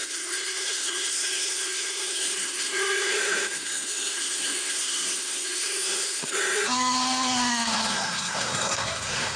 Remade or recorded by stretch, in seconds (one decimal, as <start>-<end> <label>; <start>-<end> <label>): 0.0-9.4 remade